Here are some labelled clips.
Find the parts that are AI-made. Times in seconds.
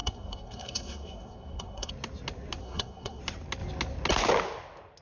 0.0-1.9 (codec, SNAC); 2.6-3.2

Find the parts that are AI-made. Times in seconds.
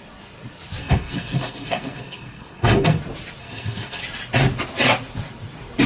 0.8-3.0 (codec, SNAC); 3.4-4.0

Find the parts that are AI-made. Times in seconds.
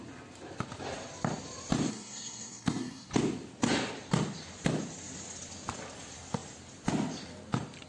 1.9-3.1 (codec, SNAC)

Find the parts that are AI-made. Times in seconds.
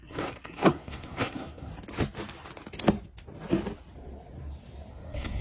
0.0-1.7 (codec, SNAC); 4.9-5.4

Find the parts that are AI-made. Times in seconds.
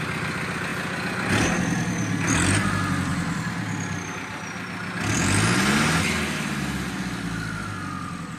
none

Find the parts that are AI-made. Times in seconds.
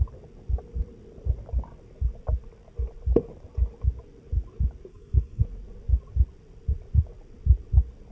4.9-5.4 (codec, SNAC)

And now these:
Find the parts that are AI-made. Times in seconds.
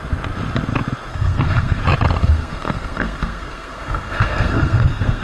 1.1-1.8 (codec, SNAC); 2.2-5.2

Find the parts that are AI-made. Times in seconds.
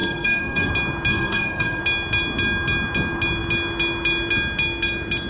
0.0-0.7 (codec, SNAC); 1.1-1.8